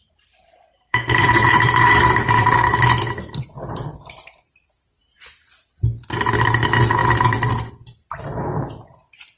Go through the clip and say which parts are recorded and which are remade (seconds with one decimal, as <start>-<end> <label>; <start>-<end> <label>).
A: 0.0-5.0 remade; 5.0-9.4 recorded